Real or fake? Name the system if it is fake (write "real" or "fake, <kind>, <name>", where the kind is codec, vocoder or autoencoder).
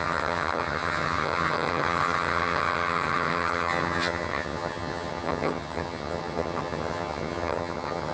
fake, vocoder, HiFi-GAN